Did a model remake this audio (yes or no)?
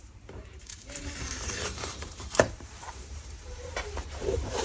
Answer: yes